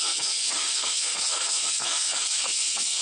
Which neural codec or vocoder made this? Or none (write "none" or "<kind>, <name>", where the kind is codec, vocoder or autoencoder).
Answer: codec, SNAC